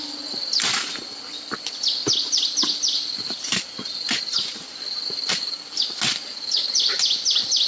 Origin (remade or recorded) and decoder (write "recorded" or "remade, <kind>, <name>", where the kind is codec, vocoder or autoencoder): recorded